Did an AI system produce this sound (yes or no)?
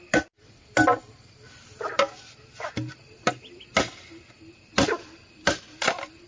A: no